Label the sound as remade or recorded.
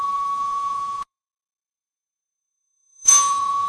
remade